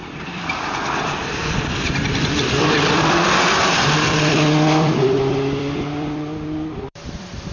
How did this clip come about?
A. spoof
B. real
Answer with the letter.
A